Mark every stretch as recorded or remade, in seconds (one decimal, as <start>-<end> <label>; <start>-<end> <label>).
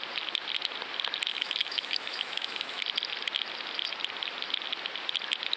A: 0.0-1.3 recorded; 1.3-2.8 remade; 2.8-5.6 recorded